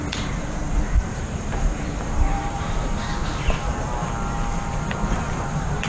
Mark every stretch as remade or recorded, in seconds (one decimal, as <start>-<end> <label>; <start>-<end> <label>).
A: 0.0-4.0 remade; 4.0-5.2 recorded; 5.2-5.9 remade